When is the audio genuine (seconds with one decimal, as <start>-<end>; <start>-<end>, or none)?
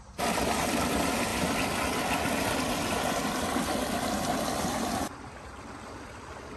1.3-5.3